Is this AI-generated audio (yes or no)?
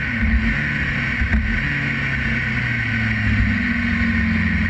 no